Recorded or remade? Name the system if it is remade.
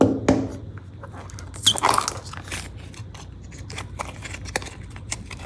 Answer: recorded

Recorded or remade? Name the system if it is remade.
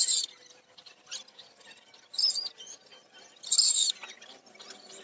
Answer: recorded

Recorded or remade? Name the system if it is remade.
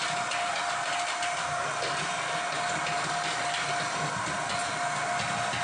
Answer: recorded